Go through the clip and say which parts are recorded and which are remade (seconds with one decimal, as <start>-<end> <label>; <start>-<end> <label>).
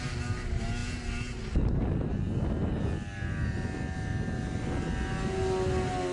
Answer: 0.0-6.1 recorded